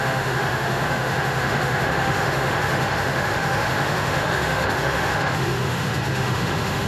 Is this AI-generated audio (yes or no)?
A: yes